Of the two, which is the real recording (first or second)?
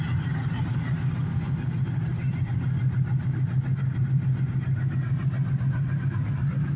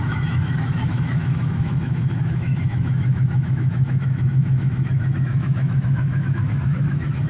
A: first